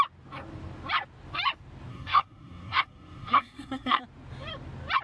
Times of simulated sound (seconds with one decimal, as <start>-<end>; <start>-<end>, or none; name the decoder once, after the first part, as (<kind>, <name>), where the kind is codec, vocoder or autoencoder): 1.9-4.0 (codec, SNAC)